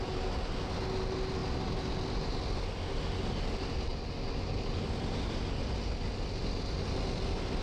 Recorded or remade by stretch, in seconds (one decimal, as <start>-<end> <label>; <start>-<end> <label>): 0.0-7.6 recorded